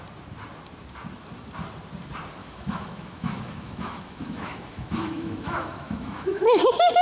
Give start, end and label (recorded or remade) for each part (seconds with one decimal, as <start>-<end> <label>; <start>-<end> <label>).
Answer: 0.0-2.4 recorded; 2.4-6.6 remade; 6.6-7.0 recorded